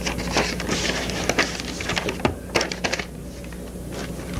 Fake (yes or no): no